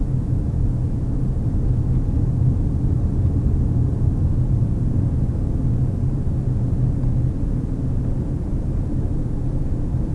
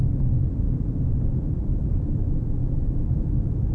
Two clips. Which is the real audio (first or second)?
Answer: first